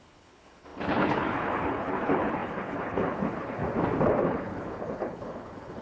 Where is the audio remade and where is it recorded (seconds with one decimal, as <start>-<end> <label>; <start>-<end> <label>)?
0.0-3.6 remade; 3.6-4.2 recorded; 4.2-5.8 remade